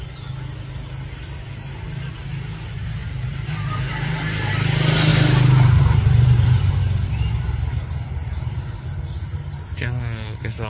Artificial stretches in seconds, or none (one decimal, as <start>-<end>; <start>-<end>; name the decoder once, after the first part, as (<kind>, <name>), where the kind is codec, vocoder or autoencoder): 3.0-4.5 (vocoder, BigVGAN v2)